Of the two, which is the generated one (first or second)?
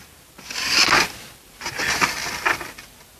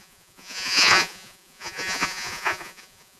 second